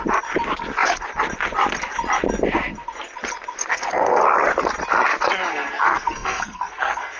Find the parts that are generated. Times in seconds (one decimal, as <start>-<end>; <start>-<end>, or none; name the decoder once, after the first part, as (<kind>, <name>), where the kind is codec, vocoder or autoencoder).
3.7-4.2 (codec, SNAC); 5.5-7.2